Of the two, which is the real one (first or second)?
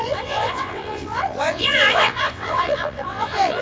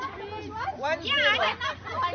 second